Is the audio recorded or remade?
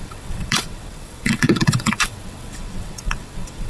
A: remade